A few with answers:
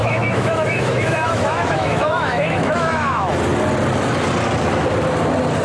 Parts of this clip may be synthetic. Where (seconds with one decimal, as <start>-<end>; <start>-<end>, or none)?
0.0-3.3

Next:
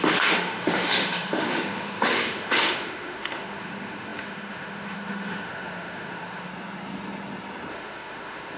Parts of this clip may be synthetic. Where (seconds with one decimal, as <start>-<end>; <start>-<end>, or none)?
0.0-6.5; 7.7-8.6

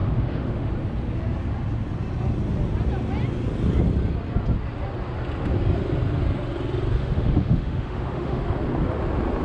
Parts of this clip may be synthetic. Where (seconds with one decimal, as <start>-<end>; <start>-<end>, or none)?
0.0-0.7; 7.0-8.4